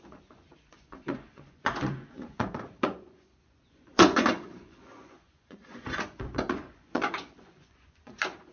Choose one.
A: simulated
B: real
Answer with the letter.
A